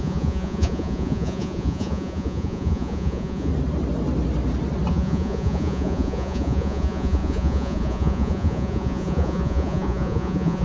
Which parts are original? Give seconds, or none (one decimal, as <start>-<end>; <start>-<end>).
3.5-4.9